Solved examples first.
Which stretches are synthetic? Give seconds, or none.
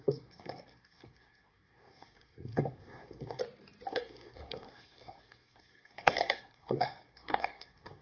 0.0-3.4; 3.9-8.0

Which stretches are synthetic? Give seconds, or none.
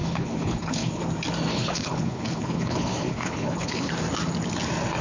0.0-1.0; 1.5-3.9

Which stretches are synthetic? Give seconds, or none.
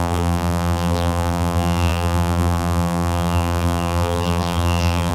0.0-5.1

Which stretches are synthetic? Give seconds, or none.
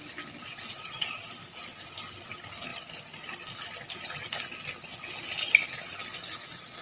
0.5-1.2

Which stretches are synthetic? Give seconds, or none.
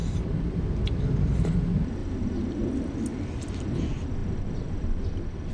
0.0-0.7; 2.0-2.5